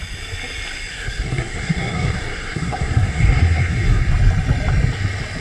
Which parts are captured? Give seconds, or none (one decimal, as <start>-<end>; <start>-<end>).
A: 0.0-0.9; 4.1-5.4